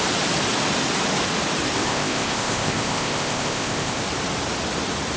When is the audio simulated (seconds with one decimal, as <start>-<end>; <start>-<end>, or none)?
1.8-4.0